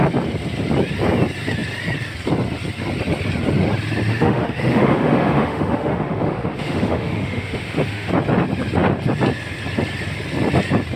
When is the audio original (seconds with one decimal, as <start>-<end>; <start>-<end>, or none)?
0.0-4.1; 8.1-11.0